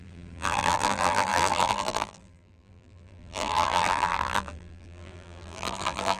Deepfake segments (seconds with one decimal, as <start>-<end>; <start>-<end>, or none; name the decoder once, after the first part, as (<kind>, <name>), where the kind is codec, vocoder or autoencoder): 0.0-6.2 (vocoder, BigVGAN v2)